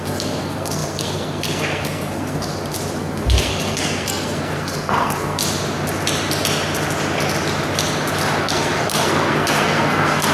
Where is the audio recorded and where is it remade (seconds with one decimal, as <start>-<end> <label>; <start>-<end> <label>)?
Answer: 0.0-2.5 remade; 2.5-3.0 recorded; 3.0-5.4 remade; 5.4-8.4 recorded; 8.4-10.3 remade